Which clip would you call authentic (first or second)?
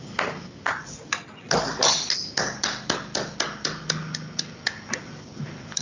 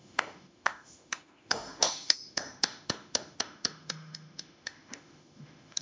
first